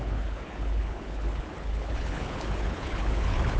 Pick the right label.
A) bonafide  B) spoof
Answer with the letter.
B